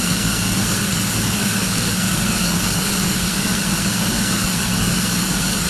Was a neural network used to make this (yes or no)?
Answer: yes